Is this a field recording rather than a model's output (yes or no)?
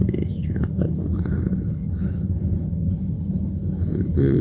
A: no